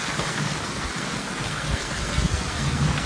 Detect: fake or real fake